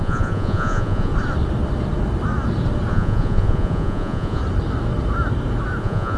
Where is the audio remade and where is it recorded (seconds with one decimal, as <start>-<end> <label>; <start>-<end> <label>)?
0.0-1.1 remade; 1.1-2.9 recorded; 2.9-4.4 remade; 4.4-5.8 recorded; 5.8-6.2 remade